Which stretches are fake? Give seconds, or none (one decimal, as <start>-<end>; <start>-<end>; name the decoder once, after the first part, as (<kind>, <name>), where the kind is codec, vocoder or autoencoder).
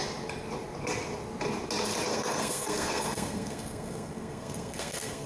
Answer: 2.1-5.3 (codec, SNAC)